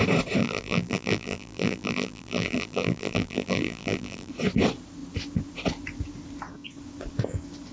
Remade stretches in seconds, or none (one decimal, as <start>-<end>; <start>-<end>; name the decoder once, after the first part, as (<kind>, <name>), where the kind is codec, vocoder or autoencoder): 0.4-4.3 (vocoder, BigVGAN v2)